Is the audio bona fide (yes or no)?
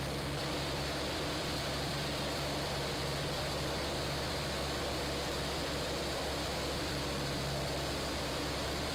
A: no